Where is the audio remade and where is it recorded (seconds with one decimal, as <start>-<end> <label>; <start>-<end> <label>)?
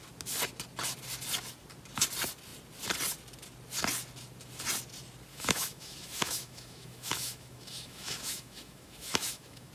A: 0.0-5.3 recorded; 5.3-9.7 remade